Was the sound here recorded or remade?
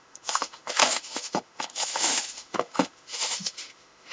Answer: remade